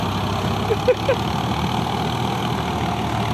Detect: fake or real real